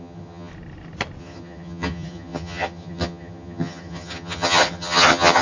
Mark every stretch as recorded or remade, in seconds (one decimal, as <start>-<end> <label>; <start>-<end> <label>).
0.0-0.5 remade; 0.5-1.2 recorded; 1.2-5.4 remade